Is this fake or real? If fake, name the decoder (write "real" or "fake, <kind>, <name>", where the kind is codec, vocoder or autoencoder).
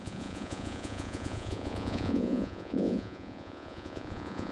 fake, vocoder, Vocos